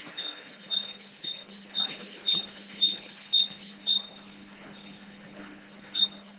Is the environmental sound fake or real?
fake